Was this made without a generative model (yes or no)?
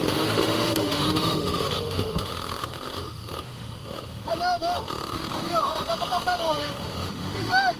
no